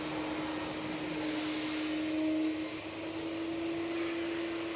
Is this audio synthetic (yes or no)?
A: no